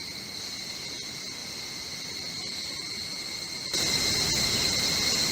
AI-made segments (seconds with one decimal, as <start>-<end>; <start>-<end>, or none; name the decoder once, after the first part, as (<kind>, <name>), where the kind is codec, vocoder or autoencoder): none